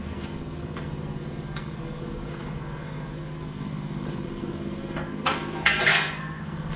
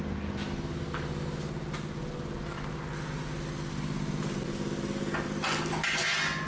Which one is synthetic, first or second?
first